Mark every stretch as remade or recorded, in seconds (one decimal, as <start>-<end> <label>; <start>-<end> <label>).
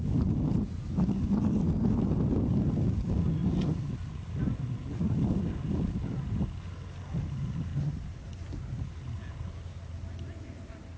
0.0-11.0 recorded